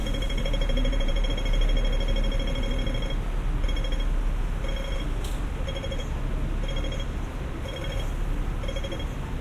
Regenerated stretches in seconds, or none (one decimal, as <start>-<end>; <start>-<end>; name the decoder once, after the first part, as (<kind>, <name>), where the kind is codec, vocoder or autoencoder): 0.0-1.3 (vocoder, Vocos)